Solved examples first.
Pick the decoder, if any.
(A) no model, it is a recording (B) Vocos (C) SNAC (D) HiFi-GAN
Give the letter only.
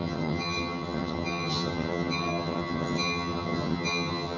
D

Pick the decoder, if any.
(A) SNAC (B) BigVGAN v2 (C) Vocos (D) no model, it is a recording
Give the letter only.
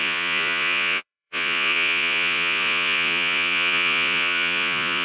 C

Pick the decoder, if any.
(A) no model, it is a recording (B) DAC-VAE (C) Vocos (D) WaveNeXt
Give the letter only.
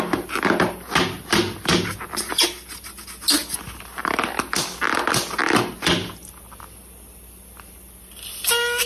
A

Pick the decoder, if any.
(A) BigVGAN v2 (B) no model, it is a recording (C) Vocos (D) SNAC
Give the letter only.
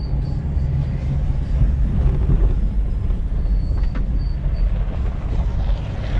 B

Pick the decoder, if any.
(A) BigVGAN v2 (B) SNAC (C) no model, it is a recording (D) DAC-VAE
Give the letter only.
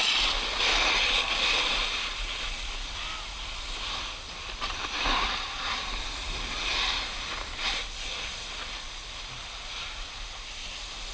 C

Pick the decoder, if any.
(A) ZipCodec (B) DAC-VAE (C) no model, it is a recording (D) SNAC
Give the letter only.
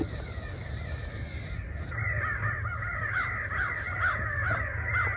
C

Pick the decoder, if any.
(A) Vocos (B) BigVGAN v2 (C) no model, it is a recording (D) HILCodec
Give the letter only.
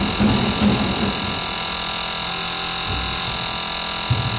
C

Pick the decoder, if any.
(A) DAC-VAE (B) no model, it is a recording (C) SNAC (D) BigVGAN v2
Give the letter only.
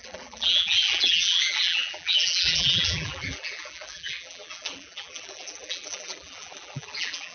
D